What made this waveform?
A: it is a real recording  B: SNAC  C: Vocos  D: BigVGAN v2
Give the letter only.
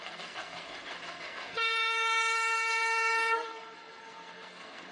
B